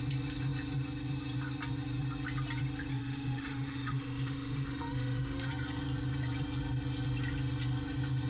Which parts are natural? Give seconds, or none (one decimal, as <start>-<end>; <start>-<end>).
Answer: 0.0-2.9; 5.5-8.3